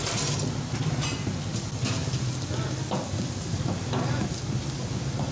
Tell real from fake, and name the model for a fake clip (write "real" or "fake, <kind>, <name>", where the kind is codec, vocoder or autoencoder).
real